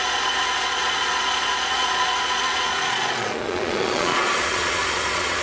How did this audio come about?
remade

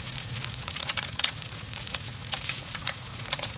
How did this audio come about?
remade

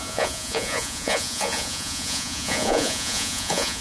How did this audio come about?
remade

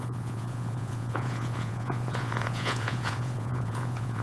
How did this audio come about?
remade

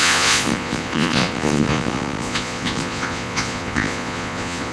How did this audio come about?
remade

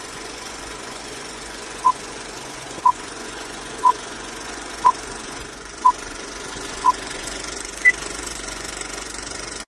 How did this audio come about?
remade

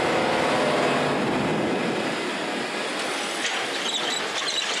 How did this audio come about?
recorded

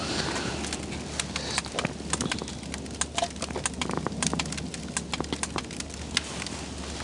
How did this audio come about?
recorded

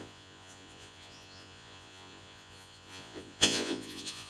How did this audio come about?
remade